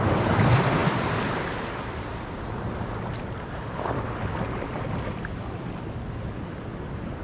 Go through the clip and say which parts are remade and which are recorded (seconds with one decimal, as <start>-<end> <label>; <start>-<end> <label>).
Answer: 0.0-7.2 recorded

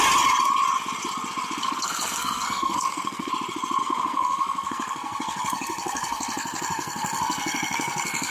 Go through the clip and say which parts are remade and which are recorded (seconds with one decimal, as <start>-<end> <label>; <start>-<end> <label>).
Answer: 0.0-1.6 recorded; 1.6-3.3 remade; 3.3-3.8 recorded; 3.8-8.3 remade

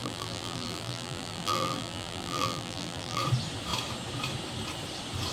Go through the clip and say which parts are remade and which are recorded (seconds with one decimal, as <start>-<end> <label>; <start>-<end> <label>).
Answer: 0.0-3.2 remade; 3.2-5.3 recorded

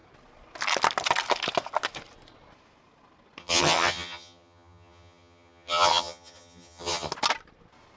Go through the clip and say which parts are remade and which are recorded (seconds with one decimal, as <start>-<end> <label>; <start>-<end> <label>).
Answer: 0.0-3.4 recorded; 3.4-7.1 remade; 7.1-8.0 recorded